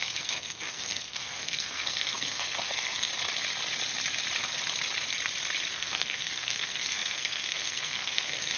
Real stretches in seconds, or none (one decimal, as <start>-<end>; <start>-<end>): 3.1-5.7